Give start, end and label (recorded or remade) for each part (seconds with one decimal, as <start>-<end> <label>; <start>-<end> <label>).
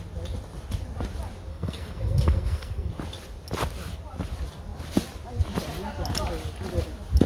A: 0.0-1.5 recorded; 1.5-2.9 remade; 2.9-7.3 recorded